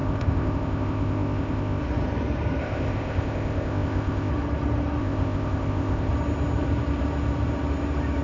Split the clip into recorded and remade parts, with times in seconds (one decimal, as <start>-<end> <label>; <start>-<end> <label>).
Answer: 0.0-1.8 remade; 1.8-2.6 recorded; 2.6-4.3 remade; 4.3-5.0 recorded; 5.0-6.1 remade; 6.1-8.2 recorded